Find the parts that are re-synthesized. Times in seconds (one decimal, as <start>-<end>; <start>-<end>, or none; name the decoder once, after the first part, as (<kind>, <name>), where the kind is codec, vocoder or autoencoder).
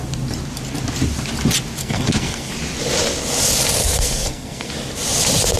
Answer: 1.8-2.5 (codec, SNAC); 3.8-4.7